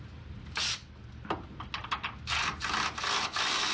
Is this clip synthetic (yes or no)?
no